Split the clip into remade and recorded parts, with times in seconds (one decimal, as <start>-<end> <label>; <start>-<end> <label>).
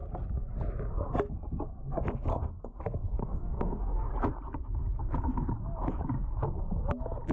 0.0-2.3 recorded; 2.3-2.8 remade; 2.8-3.2 recorded; 3.2-4.1 remade; 4.1-7.3 recorded